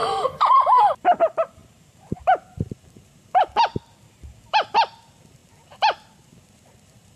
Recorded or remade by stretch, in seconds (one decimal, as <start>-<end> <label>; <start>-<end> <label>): 0.0-7.2 remade